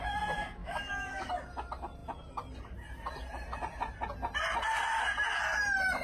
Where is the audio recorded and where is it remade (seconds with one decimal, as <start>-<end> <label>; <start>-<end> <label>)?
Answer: 0.0-0.6 recorded; 0.6-1.3 remade; 1.3-6.0 recorded